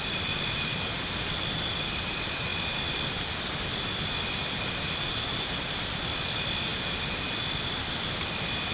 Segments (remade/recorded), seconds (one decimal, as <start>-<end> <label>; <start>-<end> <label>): 0.0-8.7 recorded